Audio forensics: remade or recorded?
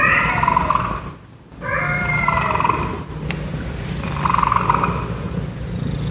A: recorded